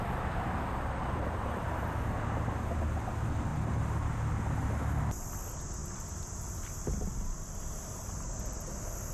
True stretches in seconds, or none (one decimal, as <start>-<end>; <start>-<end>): 0.0-9.1